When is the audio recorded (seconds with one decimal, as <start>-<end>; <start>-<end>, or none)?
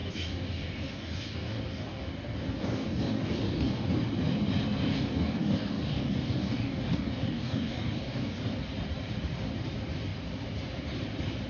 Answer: 3.9-4.9; 8.4-11.5